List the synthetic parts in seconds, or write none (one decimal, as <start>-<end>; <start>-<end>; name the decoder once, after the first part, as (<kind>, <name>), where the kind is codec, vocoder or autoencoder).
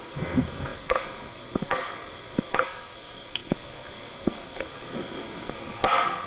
0.0-6.3 (codec, SNAC)